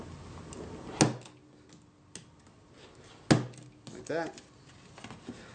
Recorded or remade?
recorded